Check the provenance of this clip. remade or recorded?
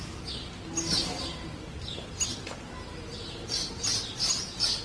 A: recorded